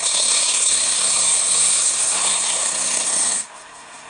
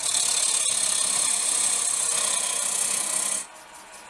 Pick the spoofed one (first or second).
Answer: first